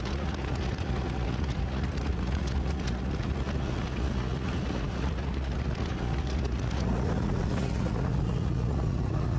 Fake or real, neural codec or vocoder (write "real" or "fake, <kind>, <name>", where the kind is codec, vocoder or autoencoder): fake, vocoder, Vocos